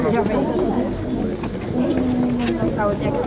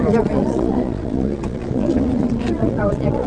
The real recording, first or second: first